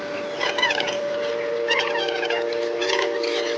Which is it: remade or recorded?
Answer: recorded